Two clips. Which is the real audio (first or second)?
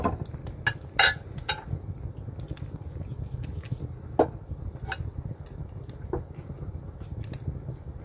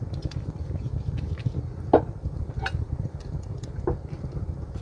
first